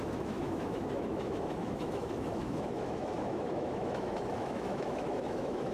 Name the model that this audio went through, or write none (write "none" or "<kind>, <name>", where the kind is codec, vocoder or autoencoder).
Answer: autoencoder, DAC-VAE